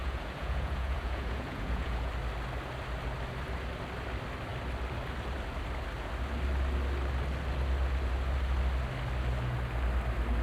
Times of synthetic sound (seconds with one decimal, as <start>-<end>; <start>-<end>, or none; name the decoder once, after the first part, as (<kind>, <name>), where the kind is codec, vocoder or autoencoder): 0.0-2.1 (vocoder, Vocos)